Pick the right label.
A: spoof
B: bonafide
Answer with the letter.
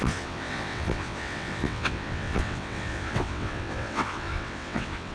A